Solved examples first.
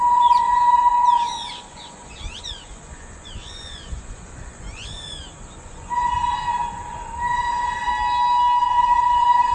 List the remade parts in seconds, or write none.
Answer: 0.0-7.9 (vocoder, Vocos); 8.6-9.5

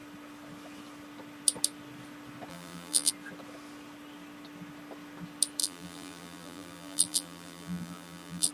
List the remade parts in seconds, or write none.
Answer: 2.5-3.1 (vocoder, BigVGAN v2); 5.6-8.5